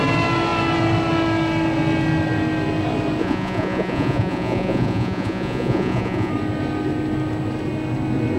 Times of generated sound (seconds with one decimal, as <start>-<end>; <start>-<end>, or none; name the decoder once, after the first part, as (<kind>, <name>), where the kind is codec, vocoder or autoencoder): 3.2-6.3 (vocoder, Vocos)